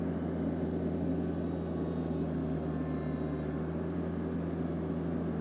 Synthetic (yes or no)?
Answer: no